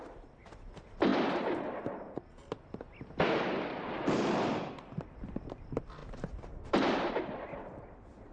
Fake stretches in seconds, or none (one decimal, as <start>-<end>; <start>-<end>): 0.0-6.0; 7.2-8.3